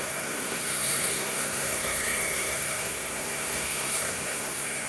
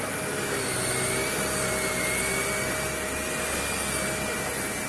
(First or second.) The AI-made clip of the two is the first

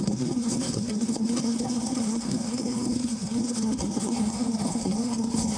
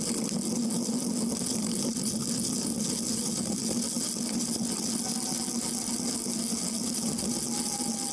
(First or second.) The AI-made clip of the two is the first